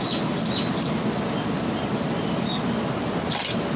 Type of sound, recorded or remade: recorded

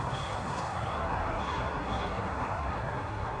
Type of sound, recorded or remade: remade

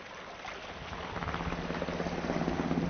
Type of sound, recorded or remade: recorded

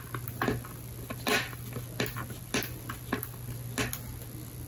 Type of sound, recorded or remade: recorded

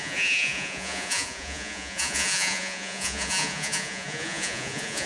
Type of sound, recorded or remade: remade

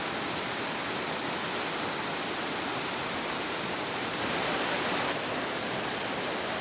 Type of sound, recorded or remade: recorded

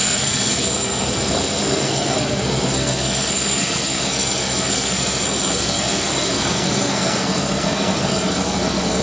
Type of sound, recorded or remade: remade